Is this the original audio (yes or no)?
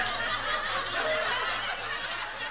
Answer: yes